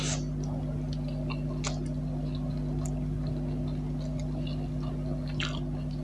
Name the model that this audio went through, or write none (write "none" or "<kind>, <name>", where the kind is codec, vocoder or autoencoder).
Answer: none